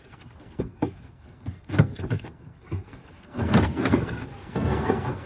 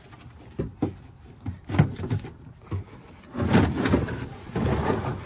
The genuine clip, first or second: second